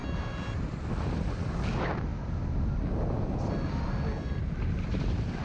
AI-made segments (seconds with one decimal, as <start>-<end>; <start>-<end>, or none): none